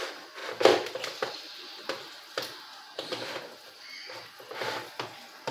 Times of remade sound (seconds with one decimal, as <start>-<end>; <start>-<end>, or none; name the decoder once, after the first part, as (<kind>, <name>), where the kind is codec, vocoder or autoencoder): 0.4-3.7 (vocoder, BigVGAN v2)